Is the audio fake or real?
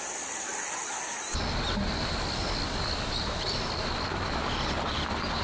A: real